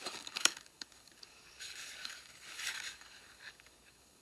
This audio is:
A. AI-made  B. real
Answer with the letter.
A